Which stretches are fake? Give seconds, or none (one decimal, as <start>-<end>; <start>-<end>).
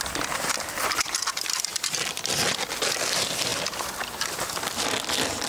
none